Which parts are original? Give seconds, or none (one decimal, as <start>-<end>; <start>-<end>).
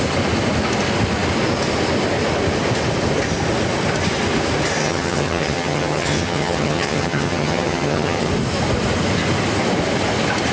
0.0-4.8; 8.3-10.5